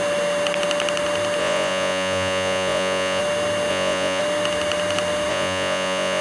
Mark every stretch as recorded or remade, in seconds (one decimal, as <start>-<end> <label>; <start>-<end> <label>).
0.0-1.4 recorded; 1.4-3.2 remade; 3.2-3.7 recorded; 3.7-4.2 remade; 4.2-5.3 recorded; 5.3-6.2 remade